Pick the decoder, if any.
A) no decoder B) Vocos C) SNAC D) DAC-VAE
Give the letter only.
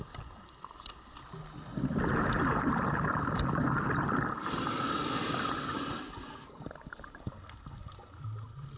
A